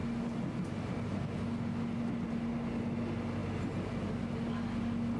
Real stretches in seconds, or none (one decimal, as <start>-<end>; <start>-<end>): 0.0-5.2